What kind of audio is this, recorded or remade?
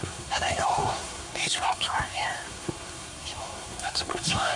remade